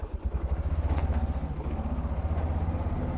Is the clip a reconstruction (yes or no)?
no